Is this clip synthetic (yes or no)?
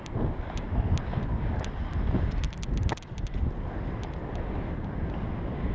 no